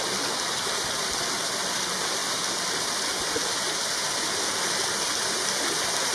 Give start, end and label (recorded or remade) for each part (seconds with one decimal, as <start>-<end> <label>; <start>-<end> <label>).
0.0-6.1 recorded